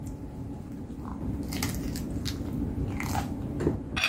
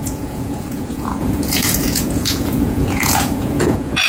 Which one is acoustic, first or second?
first